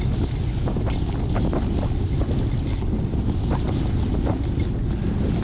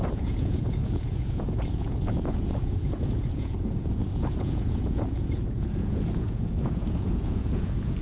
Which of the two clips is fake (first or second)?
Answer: second